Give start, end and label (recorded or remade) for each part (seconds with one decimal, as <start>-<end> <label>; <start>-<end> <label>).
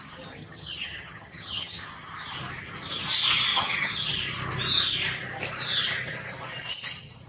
0.0-0.4 recorded; 0.4-1.9 remade; 1.9-3.5 recorded; 3.5-4.1 remade; 4.1-7.3 recorded